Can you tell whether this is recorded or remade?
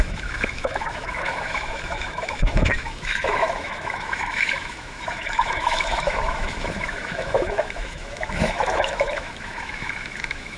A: remade